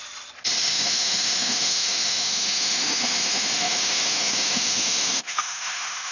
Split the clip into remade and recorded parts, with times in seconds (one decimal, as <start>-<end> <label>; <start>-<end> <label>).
0.0-0.6 recorded; 0.6-6.1 remade